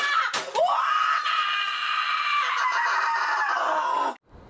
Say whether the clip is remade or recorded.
recorded